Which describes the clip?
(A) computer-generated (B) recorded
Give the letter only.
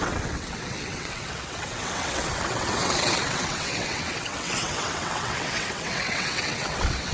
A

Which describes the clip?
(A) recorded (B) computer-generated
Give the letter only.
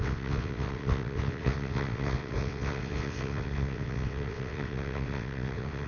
B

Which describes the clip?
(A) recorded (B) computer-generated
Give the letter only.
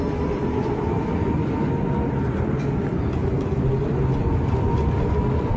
A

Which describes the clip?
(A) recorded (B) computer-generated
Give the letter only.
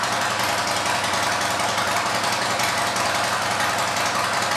A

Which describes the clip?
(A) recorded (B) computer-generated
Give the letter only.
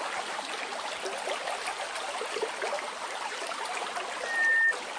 A